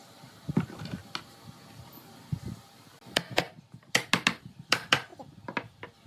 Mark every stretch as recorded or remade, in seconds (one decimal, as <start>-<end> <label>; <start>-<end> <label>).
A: 0.0-1.0 remade; 1.0-4.4 recorded; 4.4-5.1 remade; 5.1-6.1 recorded